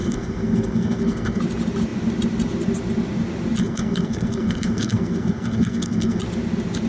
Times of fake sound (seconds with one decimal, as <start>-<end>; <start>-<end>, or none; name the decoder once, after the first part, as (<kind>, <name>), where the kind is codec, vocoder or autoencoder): 0.0-1.4 (codec, SNAC); 3.6-6.2